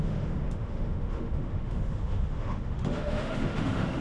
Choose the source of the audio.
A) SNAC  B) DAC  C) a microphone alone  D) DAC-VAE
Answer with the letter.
D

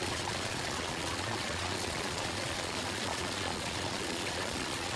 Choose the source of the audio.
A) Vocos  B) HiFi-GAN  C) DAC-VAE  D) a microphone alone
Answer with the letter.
A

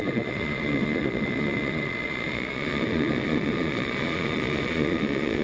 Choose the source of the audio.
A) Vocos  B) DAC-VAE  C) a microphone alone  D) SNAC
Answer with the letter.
A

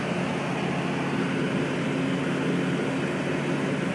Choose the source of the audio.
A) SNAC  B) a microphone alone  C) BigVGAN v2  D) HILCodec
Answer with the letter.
B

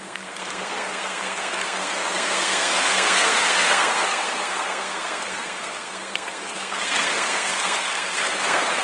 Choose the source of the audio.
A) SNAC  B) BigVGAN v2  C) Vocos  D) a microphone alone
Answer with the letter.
A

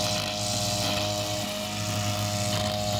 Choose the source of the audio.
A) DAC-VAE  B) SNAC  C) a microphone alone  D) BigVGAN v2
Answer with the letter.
C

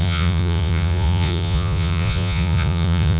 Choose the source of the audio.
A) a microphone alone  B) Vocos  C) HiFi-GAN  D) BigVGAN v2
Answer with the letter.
B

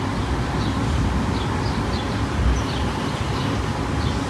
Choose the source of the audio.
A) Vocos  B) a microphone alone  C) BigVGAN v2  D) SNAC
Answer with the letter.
B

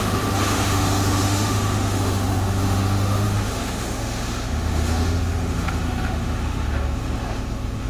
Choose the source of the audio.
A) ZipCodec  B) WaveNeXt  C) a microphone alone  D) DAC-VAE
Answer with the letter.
D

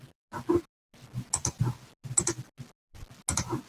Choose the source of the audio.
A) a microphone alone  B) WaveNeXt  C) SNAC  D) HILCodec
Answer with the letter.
A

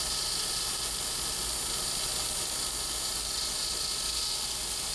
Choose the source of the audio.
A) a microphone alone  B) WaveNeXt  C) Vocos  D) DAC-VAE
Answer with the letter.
A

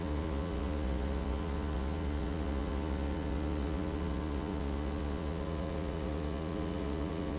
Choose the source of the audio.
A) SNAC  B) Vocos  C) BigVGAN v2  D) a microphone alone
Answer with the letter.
B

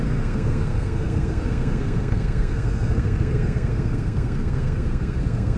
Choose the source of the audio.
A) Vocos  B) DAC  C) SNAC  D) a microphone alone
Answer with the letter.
C